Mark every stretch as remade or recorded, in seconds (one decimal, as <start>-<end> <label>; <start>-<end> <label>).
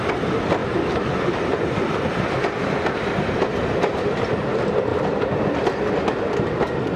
0.0-0.6 recorded; 0.6-4.1 remade; 4.1-4.9 recorded; 4.9-5.5 remade; 5.5-7.0 recorded